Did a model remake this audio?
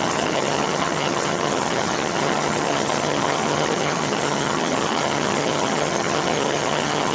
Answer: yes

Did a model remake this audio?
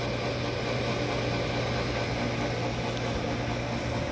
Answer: no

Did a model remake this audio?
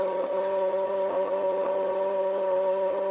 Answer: yes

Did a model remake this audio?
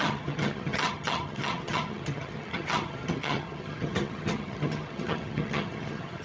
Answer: yes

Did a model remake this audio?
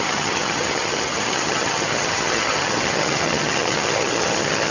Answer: yes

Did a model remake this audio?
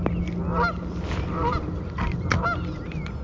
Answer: no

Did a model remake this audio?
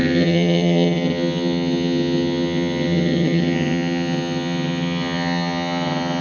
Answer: yes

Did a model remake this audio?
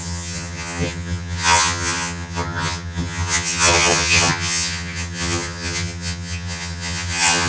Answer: yes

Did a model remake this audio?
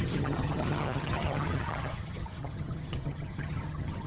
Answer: yes